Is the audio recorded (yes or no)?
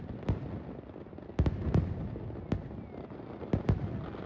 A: yes